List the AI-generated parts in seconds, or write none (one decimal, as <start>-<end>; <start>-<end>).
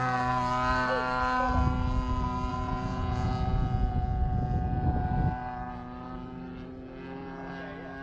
2.5-3.3